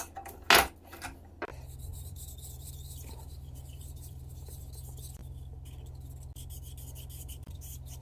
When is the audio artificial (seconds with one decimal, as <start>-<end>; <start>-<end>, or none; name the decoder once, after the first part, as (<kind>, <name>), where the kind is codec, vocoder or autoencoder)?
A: 1.9-4.6 (vocoder, BigVGAN v2)